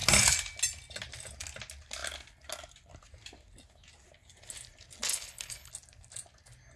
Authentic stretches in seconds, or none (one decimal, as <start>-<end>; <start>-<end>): 0.0-5.1; 5.7-6.8